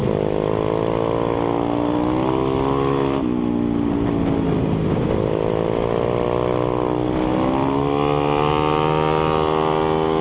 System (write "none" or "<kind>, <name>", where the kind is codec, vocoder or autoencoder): none